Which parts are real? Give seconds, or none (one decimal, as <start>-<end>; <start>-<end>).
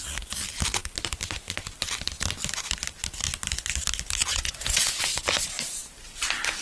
0.0-4.2; 5.0-6.6